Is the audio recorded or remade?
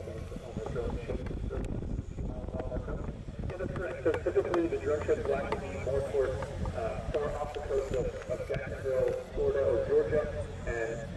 recorded